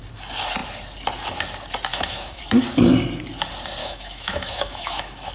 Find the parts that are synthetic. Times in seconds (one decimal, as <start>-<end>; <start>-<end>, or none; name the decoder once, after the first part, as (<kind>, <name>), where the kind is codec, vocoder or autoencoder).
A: 1.9-2.4 (autoencoder, DAC-VAE); 3.8-5.3